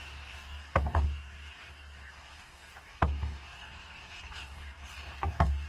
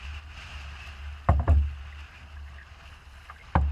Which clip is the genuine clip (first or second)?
second